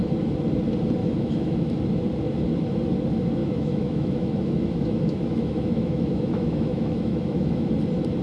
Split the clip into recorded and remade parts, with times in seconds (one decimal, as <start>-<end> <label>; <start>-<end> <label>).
0.0-1.0 recorded; 1.0-1.7 remade; 1.7-3.4 recorded; 3.4-7.7 remade; 7.7-8.2 recorded